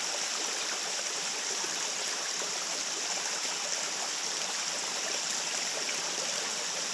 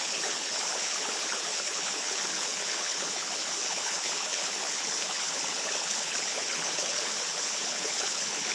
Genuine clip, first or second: first